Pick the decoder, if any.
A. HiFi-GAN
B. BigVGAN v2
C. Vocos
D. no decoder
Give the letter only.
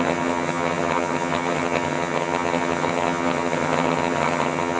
A